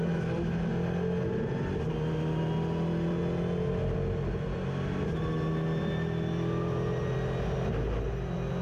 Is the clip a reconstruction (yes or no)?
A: no